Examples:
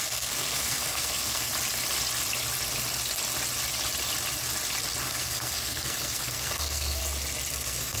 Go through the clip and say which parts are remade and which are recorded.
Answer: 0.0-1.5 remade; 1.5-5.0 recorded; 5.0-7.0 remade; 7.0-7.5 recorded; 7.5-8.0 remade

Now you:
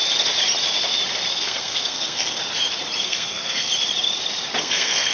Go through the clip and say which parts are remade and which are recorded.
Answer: 0.0-1.3 recorded; 1.3-2.4 remade; 2.4-3.0 recorded; 3.0-3.7 remade; 3.7-4.6 recorded; 4.6-5.1 remade

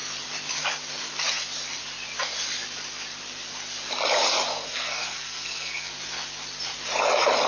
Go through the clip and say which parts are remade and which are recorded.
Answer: 0.0-4.7 recorded; 4.7-5.9 remade; 5.9-7.5 recorded

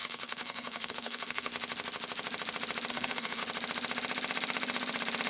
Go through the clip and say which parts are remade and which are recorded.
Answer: 0.0-1.5 remade; 1.5-2.9 recorded; 2.9-3.4 remade; 3.4-5.3 recorded